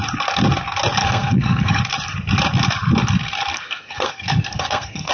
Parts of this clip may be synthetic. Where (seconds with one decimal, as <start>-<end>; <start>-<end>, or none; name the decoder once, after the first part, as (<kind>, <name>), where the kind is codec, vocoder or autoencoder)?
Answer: 1.0-1.8 (codec, SNAC); 3.5-5.1